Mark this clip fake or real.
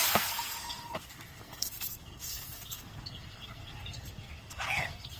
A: fake